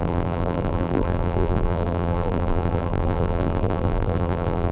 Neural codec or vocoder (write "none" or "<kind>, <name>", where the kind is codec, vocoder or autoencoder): vocoder, BigVGAN v2